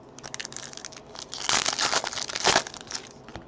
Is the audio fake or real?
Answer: real